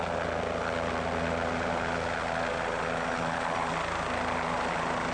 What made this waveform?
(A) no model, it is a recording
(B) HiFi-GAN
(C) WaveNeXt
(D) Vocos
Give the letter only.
A